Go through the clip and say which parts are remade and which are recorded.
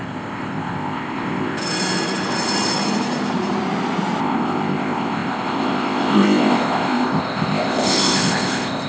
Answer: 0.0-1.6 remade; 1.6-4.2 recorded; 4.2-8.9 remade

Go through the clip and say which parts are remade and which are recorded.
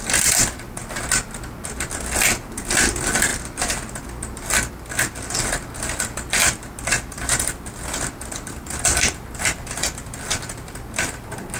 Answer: 0.0-11.6 recorded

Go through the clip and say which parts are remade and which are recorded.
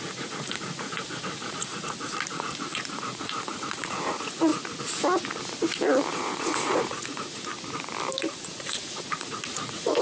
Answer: 0.0-4.5 remade; 4.5-6.1 recorded; 6.1-7.5 remade; 7.5-8.3 recorded; 8.3-10.0 remade